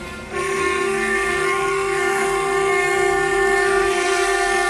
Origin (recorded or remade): remade